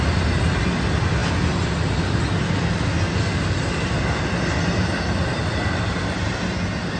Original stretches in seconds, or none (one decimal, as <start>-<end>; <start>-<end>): 0.0-7.0